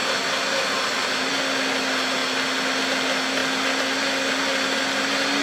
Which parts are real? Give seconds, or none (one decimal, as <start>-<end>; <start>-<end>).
0.0-5.4